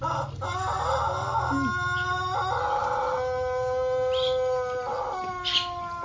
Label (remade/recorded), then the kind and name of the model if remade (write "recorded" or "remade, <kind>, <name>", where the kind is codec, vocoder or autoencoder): recorded